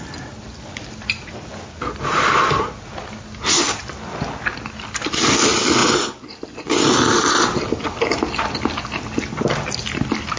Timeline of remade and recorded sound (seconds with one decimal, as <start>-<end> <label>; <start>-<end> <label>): 0.0-10.4 recorded